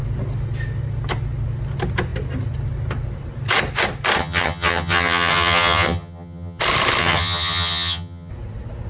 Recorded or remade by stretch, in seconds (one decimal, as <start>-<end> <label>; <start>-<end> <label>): 0.0-4.2 recorded; 4.2-6.6 remade; 6.6-7.0 recorded; 7.0-8.3 remade; 8.3-8.9 recorded